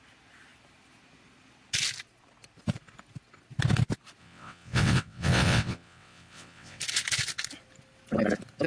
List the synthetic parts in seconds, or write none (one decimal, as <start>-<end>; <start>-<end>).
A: 4.2-6.8